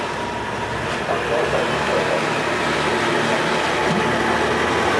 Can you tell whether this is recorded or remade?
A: recorded